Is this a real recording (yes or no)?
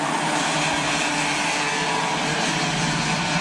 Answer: yes